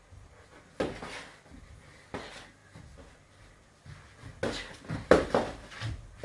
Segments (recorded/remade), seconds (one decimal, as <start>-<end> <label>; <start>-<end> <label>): 0.0-2.6 remade; 2.6-4.9 recorded; 4.9-6.2 remade